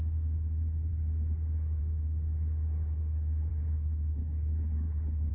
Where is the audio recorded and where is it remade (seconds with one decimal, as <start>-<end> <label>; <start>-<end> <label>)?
0.0-3.5 recorded; 3.5-5.3 remade